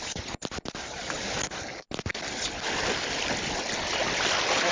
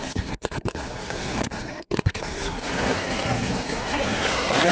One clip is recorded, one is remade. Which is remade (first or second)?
second